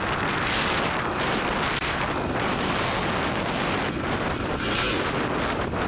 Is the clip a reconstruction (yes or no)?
no